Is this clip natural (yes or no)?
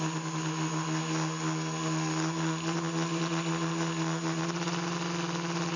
yes